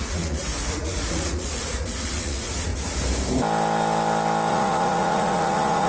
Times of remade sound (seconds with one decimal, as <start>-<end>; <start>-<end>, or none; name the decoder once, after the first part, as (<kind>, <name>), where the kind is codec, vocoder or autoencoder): 0.0-2.7 (vocoder, Vocos); 4.5-5.9